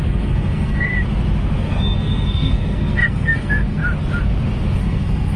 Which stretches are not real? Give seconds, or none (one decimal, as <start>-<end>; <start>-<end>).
0.0-0.9; 1.6-3.8; 4.8-5.4